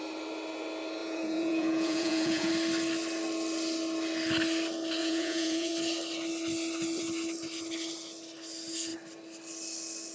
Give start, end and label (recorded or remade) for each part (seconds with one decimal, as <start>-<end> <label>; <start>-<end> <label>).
0.0-1.0 recorded; 1.0-2.5 remade; 2.5-5.0 recorded; 5.0-5.7 remade; 5.7-10.1 recorded